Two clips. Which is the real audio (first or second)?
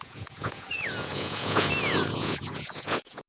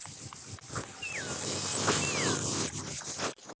second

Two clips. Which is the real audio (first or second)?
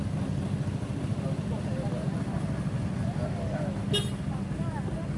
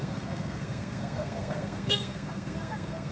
first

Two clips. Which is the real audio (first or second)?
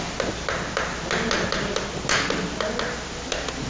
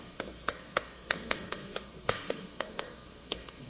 first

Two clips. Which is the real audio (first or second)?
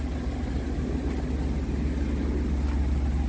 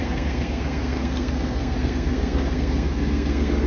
first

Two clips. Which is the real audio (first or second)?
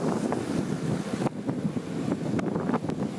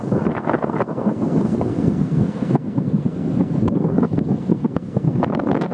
first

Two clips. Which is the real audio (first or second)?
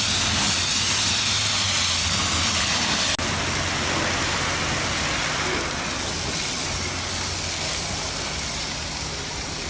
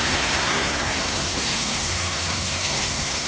first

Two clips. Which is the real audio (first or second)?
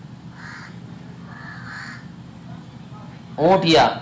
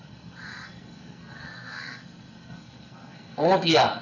first